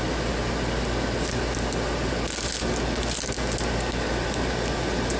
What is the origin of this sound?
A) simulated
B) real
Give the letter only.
B